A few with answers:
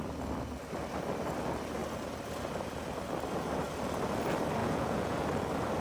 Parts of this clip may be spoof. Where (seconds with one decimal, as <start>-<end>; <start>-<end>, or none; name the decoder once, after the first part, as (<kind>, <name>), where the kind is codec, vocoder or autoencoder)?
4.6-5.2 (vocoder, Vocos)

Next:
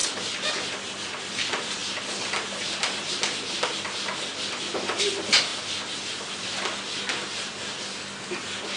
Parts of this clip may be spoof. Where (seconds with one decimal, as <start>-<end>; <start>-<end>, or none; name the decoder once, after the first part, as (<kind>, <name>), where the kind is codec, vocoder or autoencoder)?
none

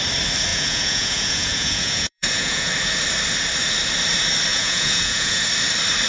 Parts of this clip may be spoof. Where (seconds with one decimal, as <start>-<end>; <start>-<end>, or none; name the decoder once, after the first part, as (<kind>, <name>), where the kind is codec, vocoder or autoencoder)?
0.5-2.7 (vocoder, Vocos); 4.5-5.4